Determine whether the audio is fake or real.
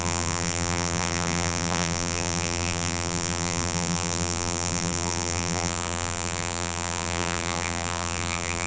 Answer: fake